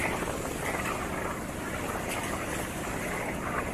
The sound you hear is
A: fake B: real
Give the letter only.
B